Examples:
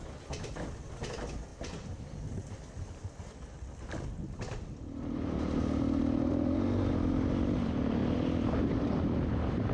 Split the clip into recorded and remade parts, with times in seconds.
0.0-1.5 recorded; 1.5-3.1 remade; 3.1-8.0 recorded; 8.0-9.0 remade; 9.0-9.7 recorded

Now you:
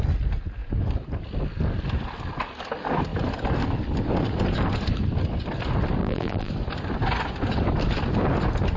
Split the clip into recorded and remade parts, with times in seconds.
0.0-6.0 recorded; 6.0-6.5 remade; 6.5-8.8 recorded

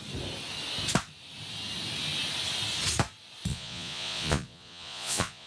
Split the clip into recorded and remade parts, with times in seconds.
0.0-3.5 recorded; 3.5-5.5 remade

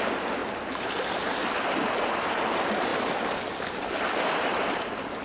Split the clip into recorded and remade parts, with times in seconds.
0.0-5.2 recorded

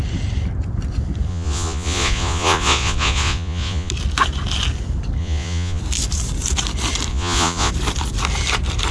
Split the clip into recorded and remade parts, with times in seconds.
0.0-1.3 recorded; 1.3-3.9 remade; 3.9-5.2 recorded; 5.2-5.8 remade; 5.8-7.1 recorded; 7.1-7.7 remade; 7.7-8.9 recorded

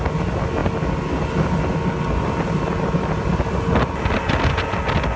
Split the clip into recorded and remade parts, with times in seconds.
0.0-5.2 recorded

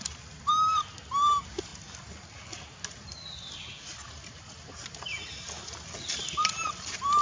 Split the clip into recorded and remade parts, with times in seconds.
0.0-7.2 recorded